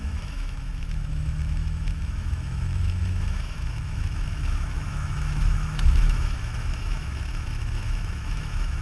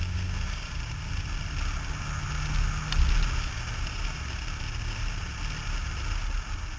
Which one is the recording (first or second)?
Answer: second